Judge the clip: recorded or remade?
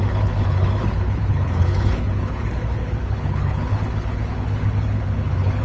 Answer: remade